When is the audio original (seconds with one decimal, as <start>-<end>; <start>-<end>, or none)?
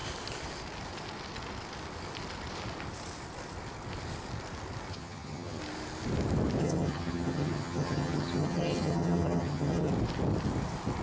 0.0-4.9; 5.6-6.6; 9.9-11.0